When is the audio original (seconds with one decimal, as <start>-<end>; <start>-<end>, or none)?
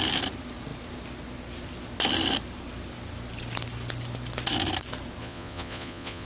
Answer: 0.0-5.2